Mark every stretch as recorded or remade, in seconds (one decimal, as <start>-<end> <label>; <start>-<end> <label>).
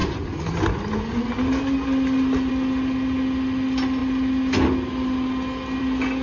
0.0-6.2 recorded